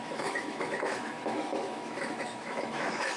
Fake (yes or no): yes